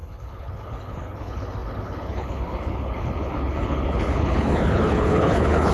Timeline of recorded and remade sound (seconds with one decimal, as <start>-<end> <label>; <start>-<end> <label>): 0.0-5.7 remade